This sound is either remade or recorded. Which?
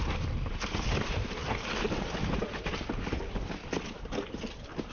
recorded